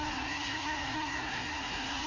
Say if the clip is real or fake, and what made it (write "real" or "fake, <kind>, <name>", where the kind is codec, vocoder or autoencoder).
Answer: fake, codec, SNAC